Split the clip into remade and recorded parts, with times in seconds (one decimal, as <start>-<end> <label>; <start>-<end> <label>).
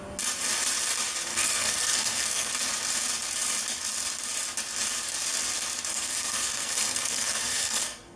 0.0-1.3 recorded; 1.3-2.5 remade; 2.5-5.9 recorded; 5.9-8.2 remade